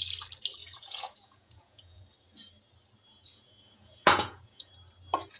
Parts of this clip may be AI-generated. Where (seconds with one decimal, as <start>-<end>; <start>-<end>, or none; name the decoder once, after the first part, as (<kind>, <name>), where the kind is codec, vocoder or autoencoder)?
0.6-2.0 (vocoder, Vocos); 3.3-4.7